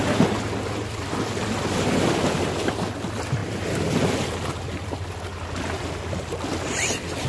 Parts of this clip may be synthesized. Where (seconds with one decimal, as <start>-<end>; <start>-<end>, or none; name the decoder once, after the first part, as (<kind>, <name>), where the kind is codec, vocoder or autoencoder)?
none